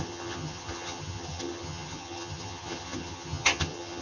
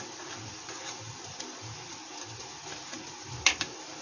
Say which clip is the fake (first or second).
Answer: first